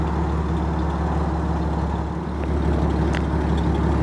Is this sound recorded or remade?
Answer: recorded